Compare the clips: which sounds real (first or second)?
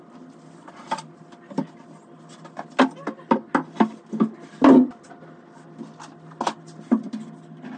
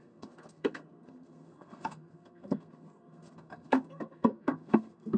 first